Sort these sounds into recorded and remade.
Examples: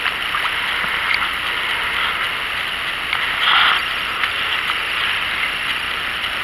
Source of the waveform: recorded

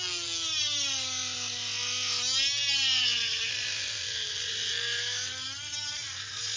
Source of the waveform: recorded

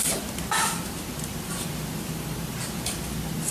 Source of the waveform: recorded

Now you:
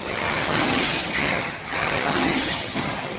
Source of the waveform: remade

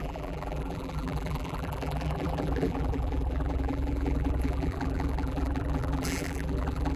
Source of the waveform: remade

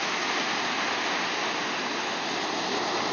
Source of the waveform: recorded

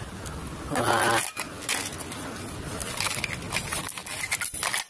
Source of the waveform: recorded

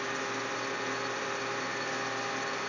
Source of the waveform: recorded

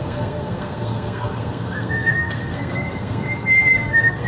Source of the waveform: remade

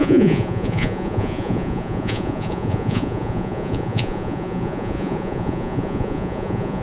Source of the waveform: remade